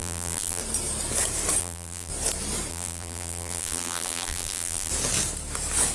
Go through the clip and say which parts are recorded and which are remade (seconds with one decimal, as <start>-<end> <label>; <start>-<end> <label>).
0.0-0.6 remade; 0.6-1.6 recorded; 1.6-2.1 remade; 2.1-2.7 recorded; 2.7-4.9 remade; 4.9-5.9 recorded